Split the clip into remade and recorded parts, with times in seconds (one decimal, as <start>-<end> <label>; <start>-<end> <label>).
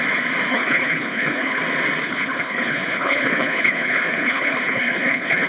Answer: 0.0-0.5 recorded; 0.5-1.6 remade; 1.6-2.0 recorded; 2.0-5.5 remade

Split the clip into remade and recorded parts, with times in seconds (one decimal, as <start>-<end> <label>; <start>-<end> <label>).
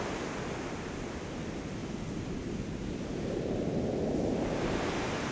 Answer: 0.0-1.8 recorded; 1.8-5.3 remade